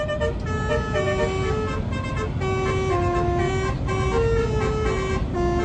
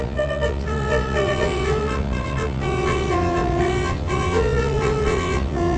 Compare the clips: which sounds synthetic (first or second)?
second